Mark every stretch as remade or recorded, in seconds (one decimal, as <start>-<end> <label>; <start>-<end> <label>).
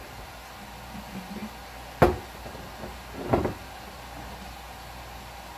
0.0-5.6 recorded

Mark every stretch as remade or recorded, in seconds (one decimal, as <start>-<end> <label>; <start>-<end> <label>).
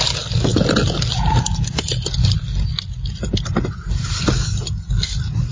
0.0-5.5 recorded